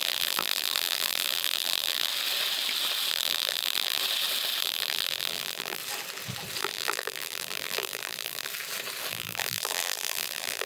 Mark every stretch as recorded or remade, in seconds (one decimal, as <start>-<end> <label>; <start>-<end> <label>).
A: 0.0-2.1 remade; 2.1-3.1 recorded; 3.1-4.0 remade; 4.0-4.6 recorded; 4.6-5.8 remade; 5.8-6.6 recorded; 6.6-8.5 remade; 8.5-9.1 recorded; 9.1-10.7 remade

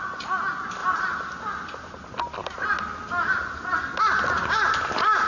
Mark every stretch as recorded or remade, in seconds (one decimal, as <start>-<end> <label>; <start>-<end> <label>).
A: 0.0-5.3 recorded

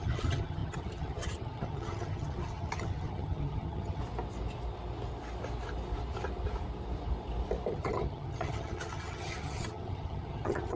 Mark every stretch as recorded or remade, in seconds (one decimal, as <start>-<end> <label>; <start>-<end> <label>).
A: 0.0-4.0 remade; 4.0-7.7 recorded; 7.7-10.8 remade

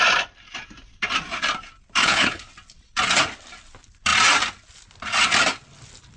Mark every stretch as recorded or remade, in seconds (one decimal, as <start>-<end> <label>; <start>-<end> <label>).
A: 0.0-2.0 recorded; 2.0-2.5 remade; 2.5-6.2 recorded

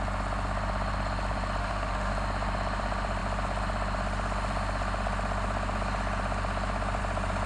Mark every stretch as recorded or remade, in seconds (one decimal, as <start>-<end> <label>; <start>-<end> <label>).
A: 0.0-1.6 recorded; 1.6-2.1 remade; 2.1-7.5 recorded

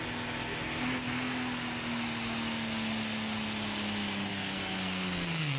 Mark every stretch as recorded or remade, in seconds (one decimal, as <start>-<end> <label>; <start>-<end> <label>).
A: 0.0-4.3 recorded; 4.3-5.6 remade

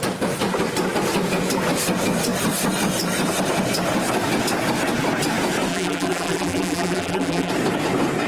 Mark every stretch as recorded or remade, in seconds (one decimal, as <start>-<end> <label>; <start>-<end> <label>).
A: 0.0-5.7 recorded; 5.7-7.5 remade; 7.5-8.3 recorded